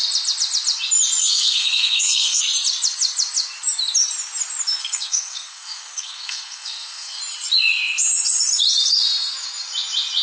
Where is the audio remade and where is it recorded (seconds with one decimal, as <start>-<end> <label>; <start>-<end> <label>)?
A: 0.0-1.2 recorded; 1.2-2.4 remade; 2.4-4.8 recorded; 4.8-7.2 remade; 7.2-10.2 recorded